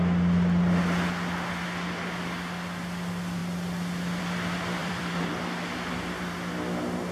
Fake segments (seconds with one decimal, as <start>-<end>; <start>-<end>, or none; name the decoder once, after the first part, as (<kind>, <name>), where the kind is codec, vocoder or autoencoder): 4.8-5.4 (vocoder, BigVGAN v2)